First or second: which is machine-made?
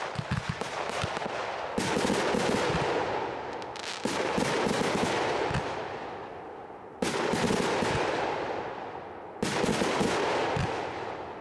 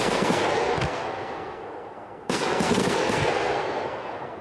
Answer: second